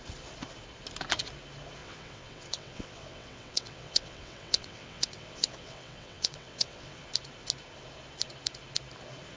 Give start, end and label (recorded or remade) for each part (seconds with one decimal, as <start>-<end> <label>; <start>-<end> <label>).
0.0-1.8 recorded; 1.8-7.0 remade; 7.0-9.4 recorded